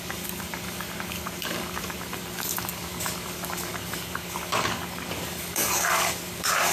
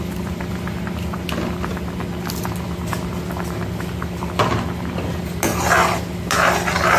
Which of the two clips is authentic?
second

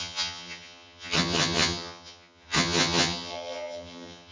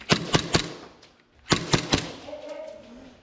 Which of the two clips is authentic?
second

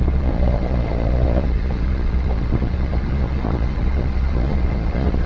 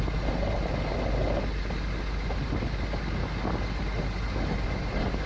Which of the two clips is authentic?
second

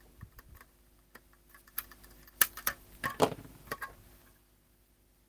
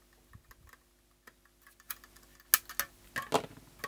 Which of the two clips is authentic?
second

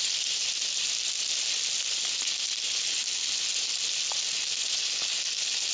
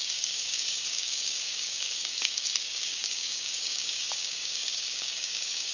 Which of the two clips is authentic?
first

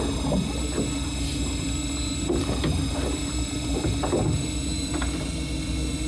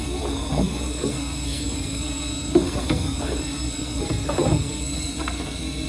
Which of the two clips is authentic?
first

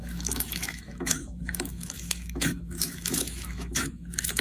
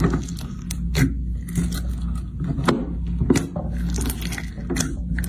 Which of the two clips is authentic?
second